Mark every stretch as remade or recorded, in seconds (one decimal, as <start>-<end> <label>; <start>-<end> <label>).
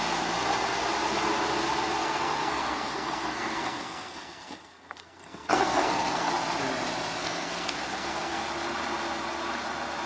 0.0-2.0 recorded; 2.0-6.3 remade; 6.3-7.2 recorded; 7.2-8.4 remade; 8.4-10.1 recorded